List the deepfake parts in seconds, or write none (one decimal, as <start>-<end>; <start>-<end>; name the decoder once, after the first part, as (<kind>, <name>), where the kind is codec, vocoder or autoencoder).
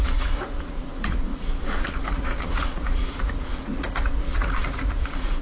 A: 0.0-5.4 (vocoder, Vocos)